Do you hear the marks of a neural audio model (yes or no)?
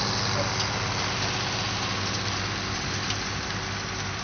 no